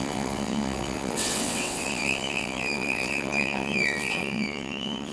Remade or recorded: remade